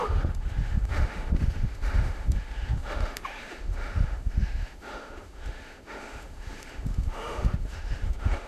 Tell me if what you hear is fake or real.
fake